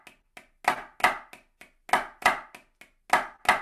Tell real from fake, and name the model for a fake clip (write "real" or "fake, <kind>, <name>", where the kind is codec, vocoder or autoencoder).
real